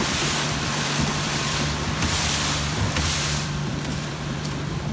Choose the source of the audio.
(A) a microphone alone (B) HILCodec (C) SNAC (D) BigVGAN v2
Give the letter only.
D